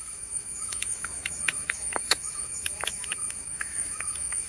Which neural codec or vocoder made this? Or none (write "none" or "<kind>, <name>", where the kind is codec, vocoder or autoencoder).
autoencoder, DAC-VAE